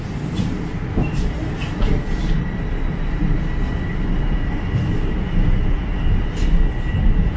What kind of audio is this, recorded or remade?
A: recorded